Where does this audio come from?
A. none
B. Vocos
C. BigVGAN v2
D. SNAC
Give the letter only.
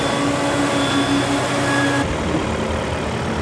A